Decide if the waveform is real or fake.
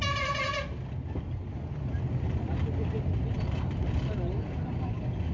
real